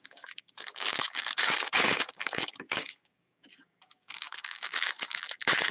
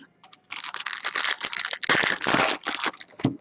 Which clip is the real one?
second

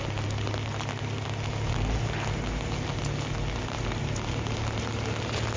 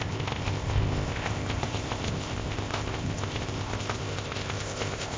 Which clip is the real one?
first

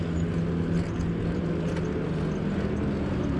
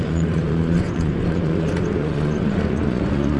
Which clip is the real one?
first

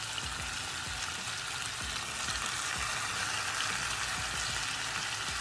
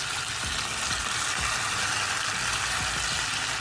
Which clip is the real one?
first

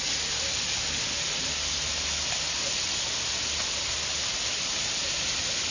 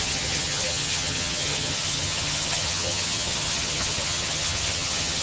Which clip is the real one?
first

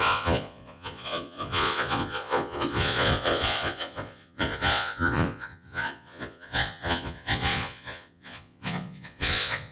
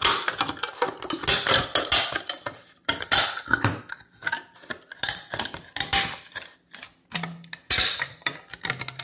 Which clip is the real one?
second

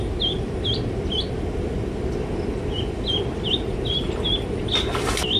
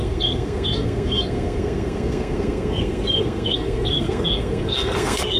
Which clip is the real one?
first